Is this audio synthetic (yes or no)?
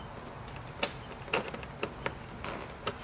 no